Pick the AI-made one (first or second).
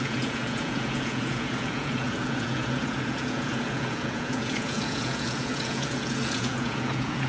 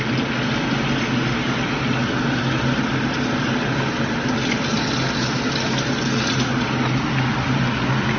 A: first